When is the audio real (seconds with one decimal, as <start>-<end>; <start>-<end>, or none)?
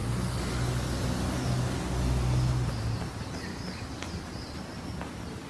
0.0-5.5